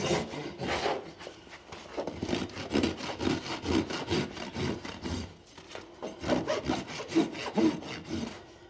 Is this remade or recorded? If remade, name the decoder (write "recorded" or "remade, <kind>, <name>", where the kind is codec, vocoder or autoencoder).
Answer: recorded